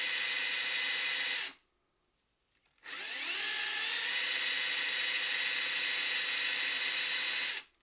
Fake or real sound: real